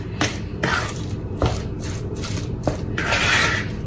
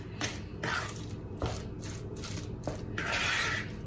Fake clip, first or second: first